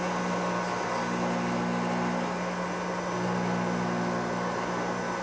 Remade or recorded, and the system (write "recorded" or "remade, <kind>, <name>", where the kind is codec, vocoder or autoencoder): recorded